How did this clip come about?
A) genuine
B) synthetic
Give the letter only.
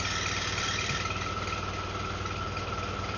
B